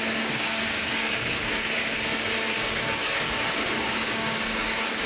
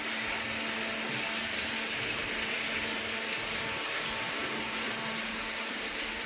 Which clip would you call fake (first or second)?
first